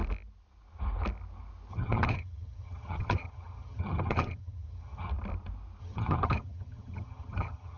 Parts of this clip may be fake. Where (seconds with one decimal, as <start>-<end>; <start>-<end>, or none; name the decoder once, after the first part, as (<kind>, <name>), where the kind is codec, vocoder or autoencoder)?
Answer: 1.7-5.1 (vocoder, HiFi-GAN); 5.8-7.8